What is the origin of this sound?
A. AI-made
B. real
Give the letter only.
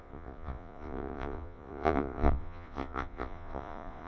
A